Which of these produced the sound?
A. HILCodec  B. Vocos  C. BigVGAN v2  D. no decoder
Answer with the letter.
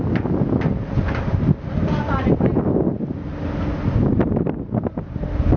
D